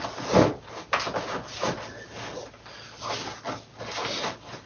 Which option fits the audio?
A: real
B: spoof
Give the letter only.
A